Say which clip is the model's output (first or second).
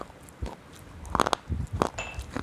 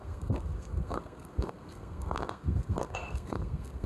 second